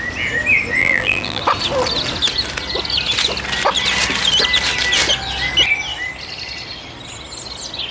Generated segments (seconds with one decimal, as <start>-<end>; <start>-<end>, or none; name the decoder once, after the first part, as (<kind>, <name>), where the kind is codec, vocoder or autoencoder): 0.8-1.4 (vocoder, BigVGAN v2)